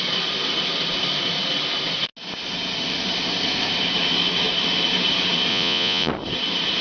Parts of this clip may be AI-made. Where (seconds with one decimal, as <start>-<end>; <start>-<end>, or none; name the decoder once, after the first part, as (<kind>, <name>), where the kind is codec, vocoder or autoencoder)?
5.5-6.1 (vocoder, Vocos)